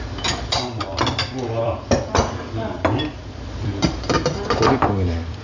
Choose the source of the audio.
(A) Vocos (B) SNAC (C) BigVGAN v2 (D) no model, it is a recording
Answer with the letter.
C